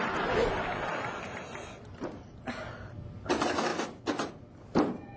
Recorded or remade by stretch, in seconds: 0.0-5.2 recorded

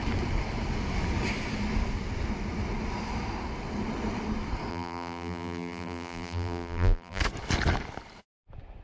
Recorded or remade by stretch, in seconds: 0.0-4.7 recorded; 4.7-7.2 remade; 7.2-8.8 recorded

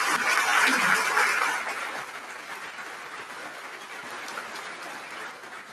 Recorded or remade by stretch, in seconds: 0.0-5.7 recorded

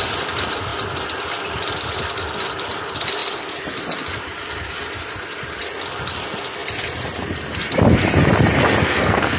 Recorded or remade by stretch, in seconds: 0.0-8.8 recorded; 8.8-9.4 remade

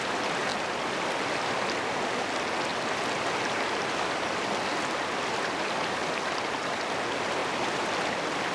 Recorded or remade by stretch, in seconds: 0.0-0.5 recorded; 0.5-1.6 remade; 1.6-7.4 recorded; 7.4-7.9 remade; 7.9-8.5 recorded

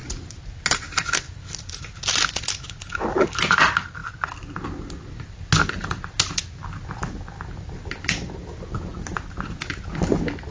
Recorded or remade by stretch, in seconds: 0.0-10.5 recorded